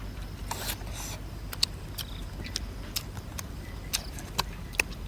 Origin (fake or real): real